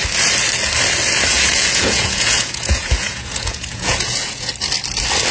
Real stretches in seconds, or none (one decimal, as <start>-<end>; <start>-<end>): 0.0-1.3; 4.5-5.3

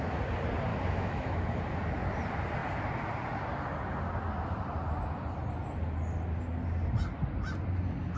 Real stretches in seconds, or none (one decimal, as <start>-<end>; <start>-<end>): 0.0-0.7; 1.6-8.2

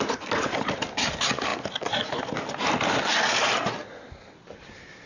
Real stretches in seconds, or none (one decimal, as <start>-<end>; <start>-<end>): 0.0-5.1

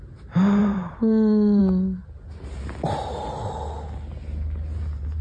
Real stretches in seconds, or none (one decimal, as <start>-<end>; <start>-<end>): 0.0-0.6; 1.6-5.2

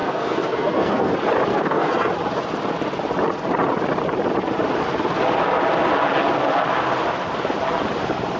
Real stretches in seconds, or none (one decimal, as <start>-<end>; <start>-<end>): 1.1-1.5; 2.1-8.4

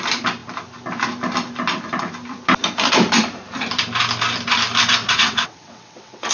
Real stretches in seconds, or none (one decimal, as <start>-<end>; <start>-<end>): 0.0-5.0

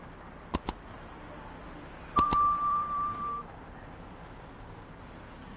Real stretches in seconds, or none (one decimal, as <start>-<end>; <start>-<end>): 0.0-1.6; 5.0-5.6

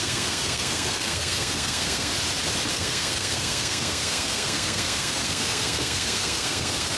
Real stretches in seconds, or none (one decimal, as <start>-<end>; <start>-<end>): 2.1-2.7